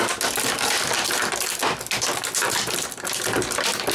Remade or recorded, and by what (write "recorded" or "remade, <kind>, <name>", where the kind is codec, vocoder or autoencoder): recorded